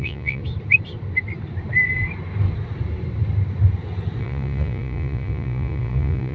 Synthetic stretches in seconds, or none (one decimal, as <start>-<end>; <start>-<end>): 0.0-0.4; 4.2-6.3